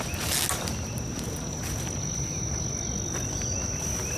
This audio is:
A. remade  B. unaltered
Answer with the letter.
B